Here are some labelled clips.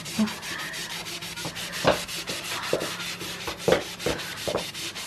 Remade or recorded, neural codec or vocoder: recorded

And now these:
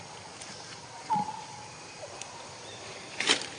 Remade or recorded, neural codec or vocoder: recorded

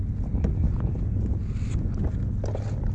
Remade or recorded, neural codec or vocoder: recorded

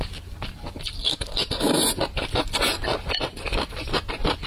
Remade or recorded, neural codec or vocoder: recorded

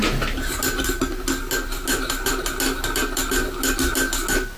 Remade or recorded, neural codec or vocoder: recorded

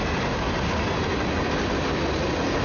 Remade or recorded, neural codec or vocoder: recorded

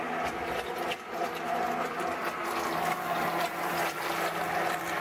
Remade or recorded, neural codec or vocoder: recorded